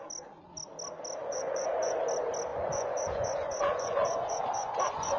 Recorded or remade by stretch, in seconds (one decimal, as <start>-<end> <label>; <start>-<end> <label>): 0.0-1.2 recorded; 1.2-2.0 remade; 2.0-2.5 recorded; 2.5-5.2 remade